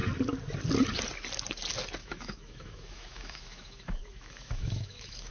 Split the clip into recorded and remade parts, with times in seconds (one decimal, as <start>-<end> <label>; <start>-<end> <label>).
0.0-2.0 recorded; 2.0-5.3 remade

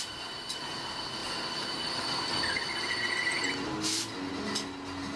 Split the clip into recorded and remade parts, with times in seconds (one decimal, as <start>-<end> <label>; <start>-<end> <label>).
0.0-5.2 recorded

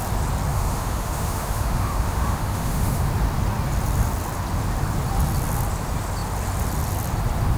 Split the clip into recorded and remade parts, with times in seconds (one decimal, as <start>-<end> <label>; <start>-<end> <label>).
0.0-0.5 recorded; 0.5-3.1 remade; 3.1-7.6 recorded

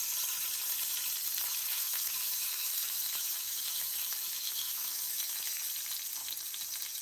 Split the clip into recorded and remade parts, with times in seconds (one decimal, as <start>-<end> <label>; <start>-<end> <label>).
0.0-1.4 recorded; 1.4-5.6 remade; 5.6-7.0 recorded